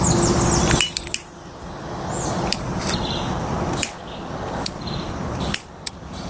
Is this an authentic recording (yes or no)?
yes